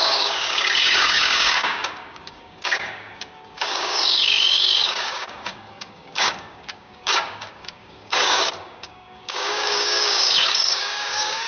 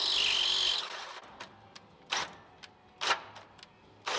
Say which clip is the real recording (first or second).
second